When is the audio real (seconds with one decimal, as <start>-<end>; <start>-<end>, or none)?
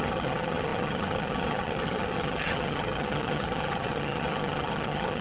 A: none